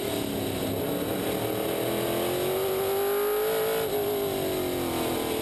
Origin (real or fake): real